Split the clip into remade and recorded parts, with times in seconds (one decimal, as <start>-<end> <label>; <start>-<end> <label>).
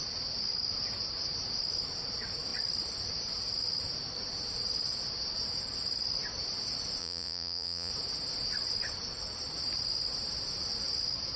0.0-7.0 recorded; 7.0-7.9 remade; 7.9-11.4 recorded